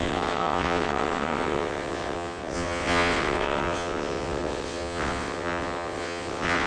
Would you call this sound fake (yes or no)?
yes